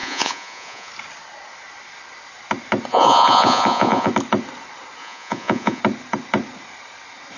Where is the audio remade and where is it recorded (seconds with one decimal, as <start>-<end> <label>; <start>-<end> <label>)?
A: 0.0-0.9 remade; 0.9-2.9 recorded; 2.9-4.1 remade; 4.1-5.0 recorded; 5.0-5.8 remade; 5.8-7.4 recorded